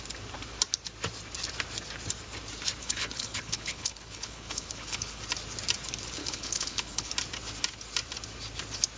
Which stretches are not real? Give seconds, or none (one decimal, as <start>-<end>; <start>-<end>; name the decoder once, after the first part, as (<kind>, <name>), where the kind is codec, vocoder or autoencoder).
2.8-5.2 (codec, HILCodec); 6.2-7.1

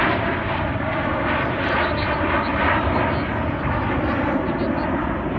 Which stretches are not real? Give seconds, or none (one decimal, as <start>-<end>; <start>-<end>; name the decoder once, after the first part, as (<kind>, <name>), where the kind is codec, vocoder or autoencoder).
none

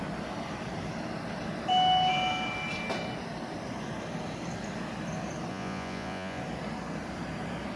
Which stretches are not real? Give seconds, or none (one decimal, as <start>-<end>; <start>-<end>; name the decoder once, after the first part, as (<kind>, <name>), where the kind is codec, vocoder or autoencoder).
5.5-6.4 (vocoder, Vocos)

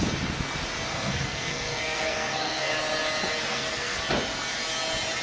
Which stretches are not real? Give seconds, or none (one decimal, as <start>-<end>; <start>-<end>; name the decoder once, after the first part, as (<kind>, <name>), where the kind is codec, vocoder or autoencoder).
0.9-2.7 (codec, SNAC); 3.5-4.0

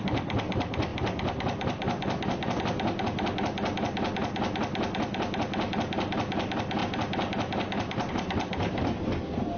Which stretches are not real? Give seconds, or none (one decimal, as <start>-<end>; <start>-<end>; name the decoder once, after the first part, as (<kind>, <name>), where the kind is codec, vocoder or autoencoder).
none

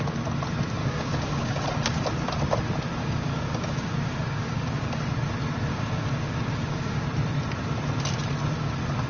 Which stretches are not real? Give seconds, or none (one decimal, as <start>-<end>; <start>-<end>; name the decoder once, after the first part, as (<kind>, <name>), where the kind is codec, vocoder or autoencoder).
0.8-1.6 (codec, DAC); 3.0-5.0; 5.7-7.0

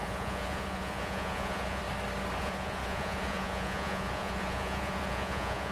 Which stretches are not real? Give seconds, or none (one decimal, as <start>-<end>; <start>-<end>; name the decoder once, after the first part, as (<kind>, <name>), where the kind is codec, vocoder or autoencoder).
0.0-1.8 (vocoder, Vocos); 2.4-5.7